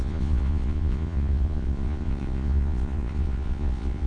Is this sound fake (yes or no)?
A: yes